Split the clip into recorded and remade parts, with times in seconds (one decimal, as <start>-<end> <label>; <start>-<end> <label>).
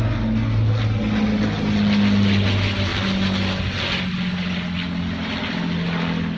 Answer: 0.0-6.4 recorded